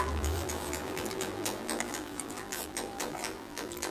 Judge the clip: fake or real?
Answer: fake